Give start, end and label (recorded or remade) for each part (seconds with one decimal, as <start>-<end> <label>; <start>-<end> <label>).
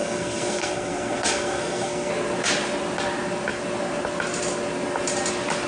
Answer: 0.0-2.1 remade; 2.1-5.7 recorded